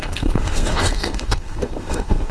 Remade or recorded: remade